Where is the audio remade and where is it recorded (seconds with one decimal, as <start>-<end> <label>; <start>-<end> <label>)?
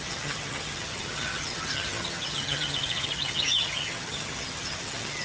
0.0-5.2 remade